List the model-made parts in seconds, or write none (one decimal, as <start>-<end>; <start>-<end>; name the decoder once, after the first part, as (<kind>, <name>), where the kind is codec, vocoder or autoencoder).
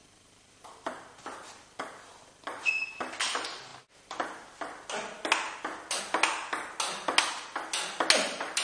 0.0-0.9 (vocoder, BigVGAN v2)